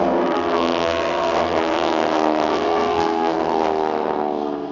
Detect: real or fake fake